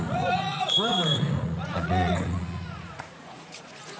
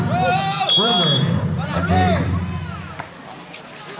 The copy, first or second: first